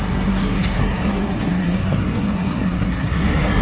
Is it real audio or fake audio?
fake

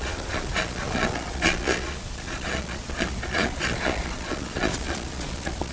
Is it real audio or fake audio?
fake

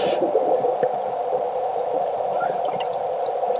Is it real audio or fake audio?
fake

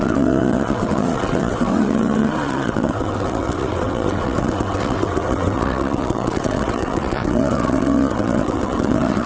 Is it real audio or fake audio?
fake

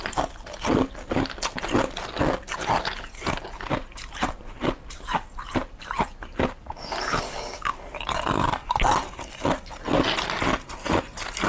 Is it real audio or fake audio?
real